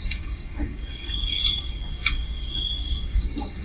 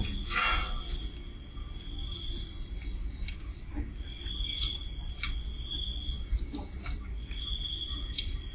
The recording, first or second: second